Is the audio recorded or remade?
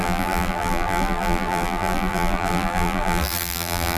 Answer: remade